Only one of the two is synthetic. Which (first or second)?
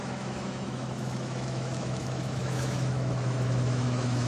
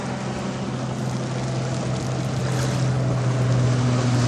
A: first